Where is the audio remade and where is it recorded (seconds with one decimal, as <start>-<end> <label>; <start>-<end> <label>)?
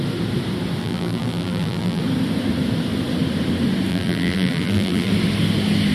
0.0-0.8 recorded; 0.8-2.0 remade; 2.0-3.9 recorded; 3.9-5.1 remade; 5.1-5.9 recorded